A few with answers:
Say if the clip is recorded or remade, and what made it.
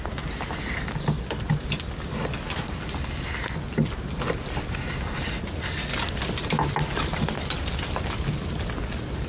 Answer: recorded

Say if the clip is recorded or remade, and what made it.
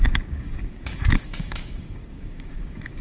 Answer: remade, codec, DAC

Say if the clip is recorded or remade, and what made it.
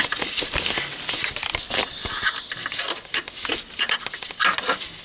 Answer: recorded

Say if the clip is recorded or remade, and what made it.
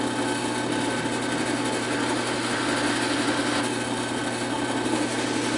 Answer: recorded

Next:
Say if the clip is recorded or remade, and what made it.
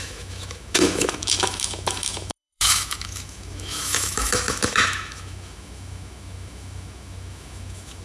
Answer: remade, autoencoder, DAC-VAE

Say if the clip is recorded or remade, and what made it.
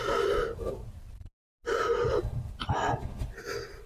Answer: recorded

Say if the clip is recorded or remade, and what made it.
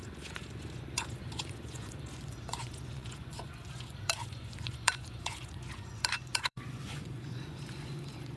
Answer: remade, vocoder, Vocos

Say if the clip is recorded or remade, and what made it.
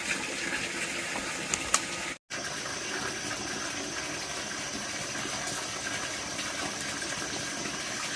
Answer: recorded